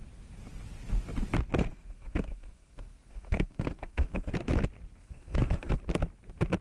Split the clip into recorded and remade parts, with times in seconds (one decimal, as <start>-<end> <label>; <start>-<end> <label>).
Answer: 0.0-1.7 recorded; 1.7-4.3 remade; 4.3-5.0 recorded; 5.0-5.8 remade; 5.8-6.6 recorded